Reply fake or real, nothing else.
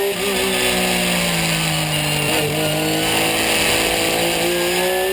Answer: real